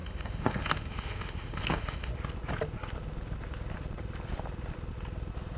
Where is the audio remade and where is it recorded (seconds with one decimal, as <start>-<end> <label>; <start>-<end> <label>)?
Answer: 0.0-2.1 remade; 2.1-5.6 recorded